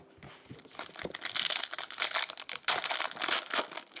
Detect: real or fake real